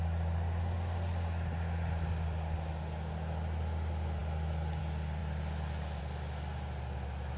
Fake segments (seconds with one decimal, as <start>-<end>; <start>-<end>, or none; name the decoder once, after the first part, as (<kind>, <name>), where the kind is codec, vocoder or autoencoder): none